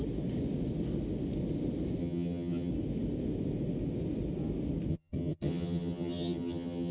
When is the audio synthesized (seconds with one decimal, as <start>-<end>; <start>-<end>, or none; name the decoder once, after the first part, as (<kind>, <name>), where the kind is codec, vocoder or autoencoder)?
2.0-2.7 (vocoder, HiFi-GAN); 4.9-6.9